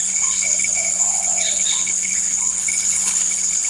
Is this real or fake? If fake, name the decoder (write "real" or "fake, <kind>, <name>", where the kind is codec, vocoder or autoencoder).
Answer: fake, codec, HILCodec